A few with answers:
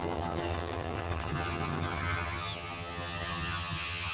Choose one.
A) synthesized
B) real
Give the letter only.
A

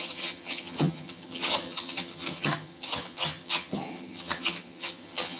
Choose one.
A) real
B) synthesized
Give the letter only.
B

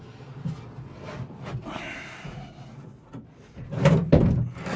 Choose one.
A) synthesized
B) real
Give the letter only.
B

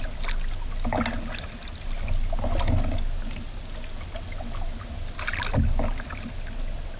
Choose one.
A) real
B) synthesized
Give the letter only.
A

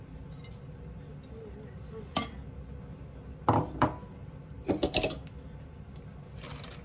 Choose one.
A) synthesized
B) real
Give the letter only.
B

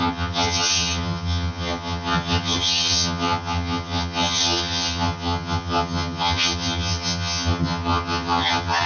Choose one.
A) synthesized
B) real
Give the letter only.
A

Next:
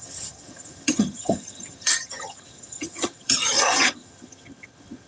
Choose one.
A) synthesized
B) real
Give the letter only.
A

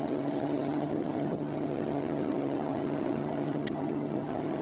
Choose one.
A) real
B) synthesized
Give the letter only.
B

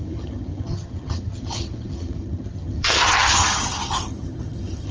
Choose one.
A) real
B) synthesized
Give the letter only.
B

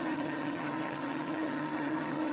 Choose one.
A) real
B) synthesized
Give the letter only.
B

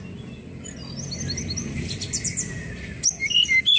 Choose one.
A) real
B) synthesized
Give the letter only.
A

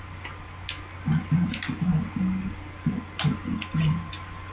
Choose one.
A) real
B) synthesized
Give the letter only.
A